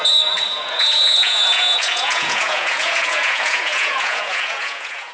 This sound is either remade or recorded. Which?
remade